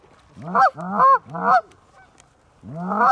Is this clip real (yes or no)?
yes